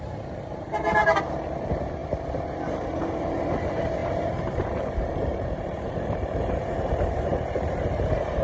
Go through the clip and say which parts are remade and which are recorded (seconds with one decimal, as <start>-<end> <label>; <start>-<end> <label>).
0.0-8.4 remade